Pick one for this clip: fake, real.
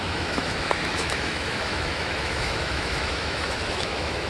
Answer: fake